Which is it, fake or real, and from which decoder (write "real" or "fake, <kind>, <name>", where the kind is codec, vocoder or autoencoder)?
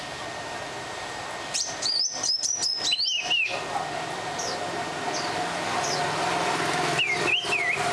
fake, vocoder, BigVGAN v2